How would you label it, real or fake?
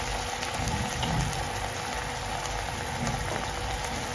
real